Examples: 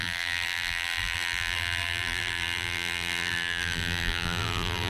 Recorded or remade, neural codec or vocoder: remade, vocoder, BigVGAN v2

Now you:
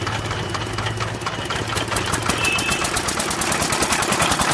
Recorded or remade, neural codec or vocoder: recorded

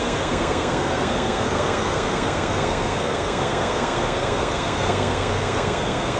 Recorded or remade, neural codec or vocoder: remade, codec, SNAC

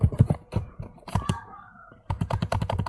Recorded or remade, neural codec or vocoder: remade, vocoder, BigVGAN v2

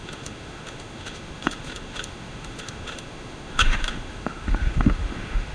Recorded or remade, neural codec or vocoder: remade, autoencoder, DAC-VAE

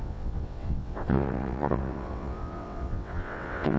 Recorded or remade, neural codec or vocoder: remade, vocoder, WaveNeXt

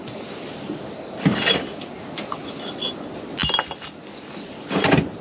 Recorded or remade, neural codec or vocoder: recorded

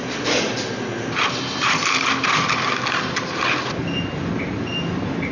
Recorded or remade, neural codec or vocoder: recorded